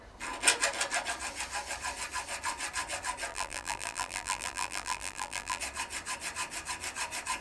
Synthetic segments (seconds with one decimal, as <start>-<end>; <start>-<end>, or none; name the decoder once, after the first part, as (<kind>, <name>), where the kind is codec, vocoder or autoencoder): 3.3-5.6 (vocoder, BigVGAN v2)